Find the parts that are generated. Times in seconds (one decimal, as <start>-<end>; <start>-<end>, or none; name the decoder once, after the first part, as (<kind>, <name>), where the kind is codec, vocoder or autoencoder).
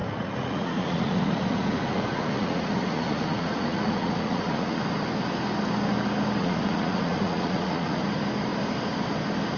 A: 0.0-4.8 (vocoder, Vocos); 6.4-8.0